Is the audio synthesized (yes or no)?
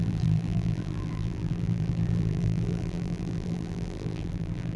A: yes